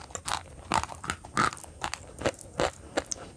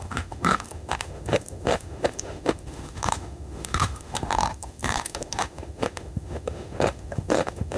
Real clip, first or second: first